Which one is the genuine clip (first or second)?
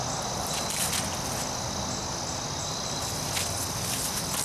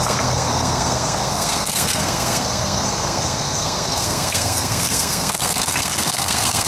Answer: first